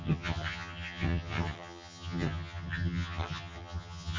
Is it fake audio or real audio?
fake